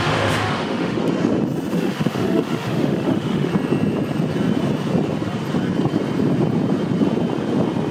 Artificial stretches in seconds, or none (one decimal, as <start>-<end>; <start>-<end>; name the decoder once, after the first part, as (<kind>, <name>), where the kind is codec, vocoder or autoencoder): 0.0-1.0 (autoencoder, DAC-VAE); 1.7-3.5